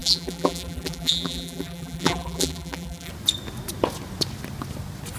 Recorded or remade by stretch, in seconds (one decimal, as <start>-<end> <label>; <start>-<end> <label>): 0.0-3.1 remade; 3.1-5.2 recorded